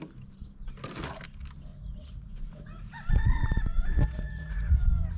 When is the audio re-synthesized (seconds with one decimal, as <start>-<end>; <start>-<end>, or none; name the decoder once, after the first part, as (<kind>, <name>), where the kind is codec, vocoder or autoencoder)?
1.7-4.8 (vocoder, Vocos)